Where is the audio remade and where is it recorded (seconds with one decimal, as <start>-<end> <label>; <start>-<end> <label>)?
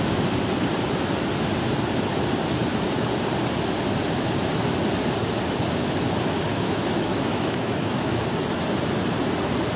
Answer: 0.0-6.5 recorded; 6.5-8.2 remade; 8.2-9.8 recorded